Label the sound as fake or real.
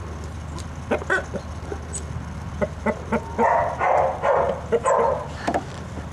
real